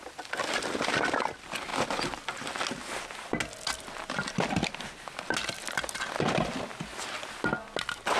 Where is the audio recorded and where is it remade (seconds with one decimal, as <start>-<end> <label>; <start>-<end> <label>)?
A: 0.0-8.2 recorded